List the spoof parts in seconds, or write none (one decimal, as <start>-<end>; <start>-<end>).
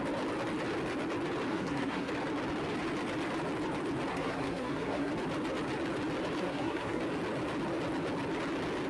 1.5-2.1; 4.1-5.1; 6.4-7.0